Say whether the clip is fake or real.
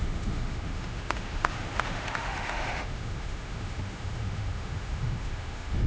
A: fake